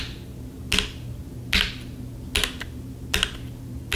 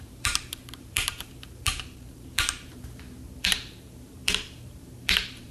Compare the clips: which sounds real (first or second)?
first